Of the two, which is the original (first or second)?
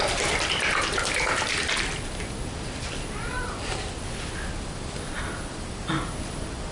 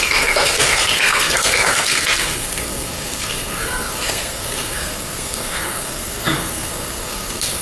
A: first